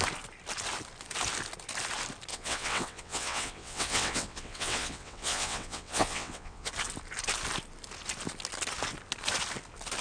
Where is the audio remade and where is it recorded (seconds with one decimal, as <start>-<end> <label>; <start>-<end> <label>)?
0.0-2.3 recorded; 2.3-6.7 remade; 6.7-10.0 recorded

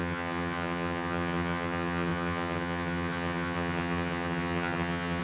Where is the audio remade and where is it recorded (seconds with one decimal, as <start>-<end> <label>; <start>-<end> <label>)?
0.0-5.2 remade

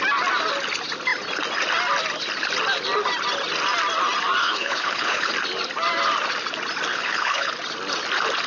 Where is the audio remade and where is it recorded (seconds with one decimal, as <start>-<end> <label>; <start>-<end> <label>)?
0.0-4.4 recorded; 4.4-5.3 remade; 5.3-6.9 recorded; 6.9-7.5 remade; 7.5-8.5 recorded